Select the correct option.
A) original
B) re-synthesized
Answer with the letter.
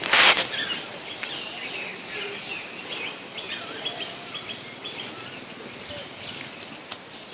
A